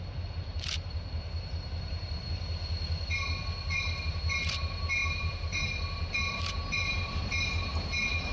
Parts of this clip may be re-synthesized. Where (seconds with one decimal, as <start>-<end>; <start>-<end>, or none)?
0.0-2.6; 4.1-8.3